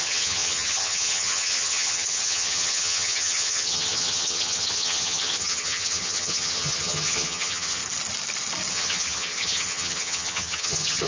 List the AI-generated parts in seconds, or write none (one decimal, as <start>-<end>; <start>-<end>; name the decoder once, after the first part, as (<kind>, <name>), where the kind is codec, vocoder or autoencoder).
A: 0.0-7.8 (vocoder, HiFi-GAN); 8.7-11.1